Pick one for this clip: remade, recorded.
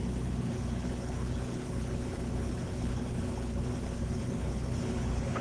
remade